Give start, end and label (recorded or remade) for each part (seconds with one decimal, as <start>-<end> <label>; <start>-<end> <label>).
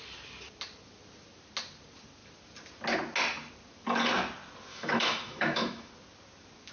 0.0-4.7 recorded; 4.7-5.9 remade; 5.9-6.7 recorded